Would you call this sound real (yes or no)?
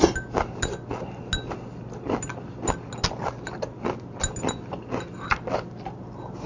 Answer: yes